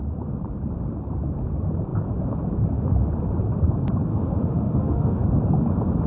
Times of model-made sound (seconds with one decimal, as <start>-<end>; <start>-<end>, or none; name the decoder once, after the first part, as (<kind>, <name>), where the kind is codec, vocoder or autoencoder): 4.1-5.3 (autoencoder, DAC-VAE)